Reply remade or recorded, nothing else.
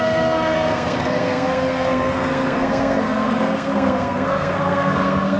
remade